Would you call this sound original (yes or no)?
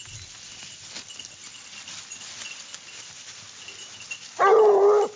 yes